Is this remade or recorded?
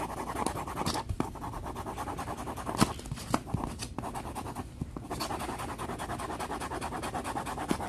recorded